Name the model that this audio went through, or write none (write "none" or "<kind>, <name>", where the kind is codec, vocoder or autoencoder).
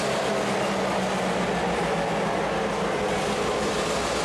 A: none